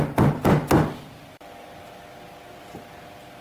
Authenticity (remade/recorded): recorded